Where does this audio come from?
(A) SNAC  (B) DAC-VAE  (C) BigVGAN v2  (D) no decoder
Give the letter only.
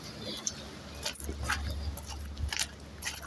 D